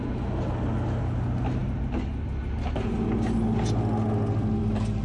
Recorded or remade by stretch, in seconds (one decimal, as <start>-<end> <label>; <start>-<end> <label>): 0.0-5.0 recorded

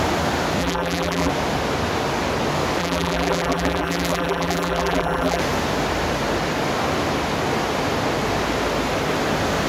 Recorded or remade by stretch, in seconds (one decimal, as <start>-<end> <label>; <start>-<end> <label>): 0.0-0.6 recorded; 0.6-1.3 remade; 1.3-2.8 recorded; 2.8-5.4 remade; 5.4-9.7 recorded

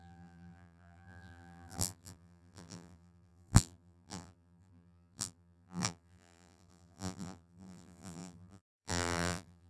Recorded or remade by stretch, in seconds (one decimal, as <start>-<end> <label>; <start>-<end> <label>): 0.0-9.7 remade

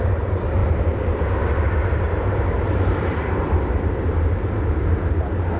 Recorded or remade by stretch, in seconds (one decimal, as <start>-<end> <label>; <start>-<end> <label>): 0.0-0.6 recorded; 0.6-4.0 remade; 4.0-5.6 recorded